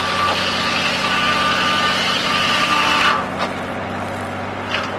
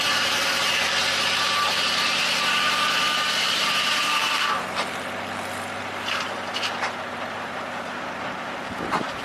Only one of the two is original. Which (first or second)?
first